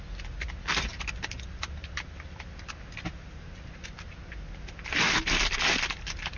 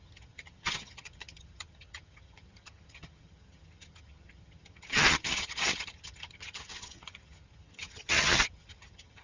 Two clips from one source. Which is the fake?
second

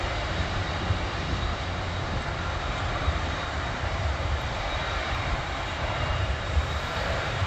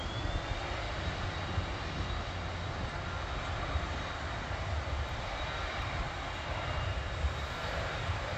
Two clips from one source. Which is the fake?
first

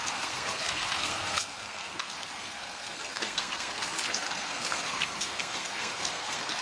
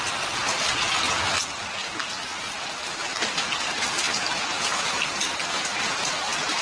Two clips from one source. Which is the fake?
first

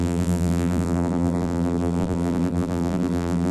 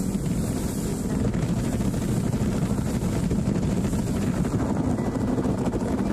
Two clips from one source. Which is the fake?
first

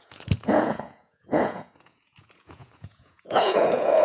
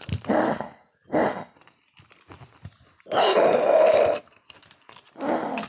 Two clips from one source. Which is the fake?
first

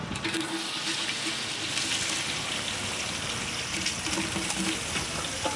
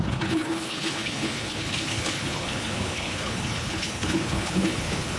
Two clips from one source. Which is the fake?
second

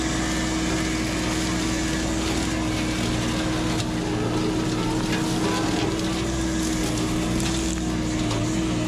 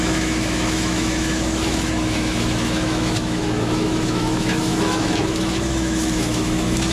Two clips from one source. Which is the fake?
second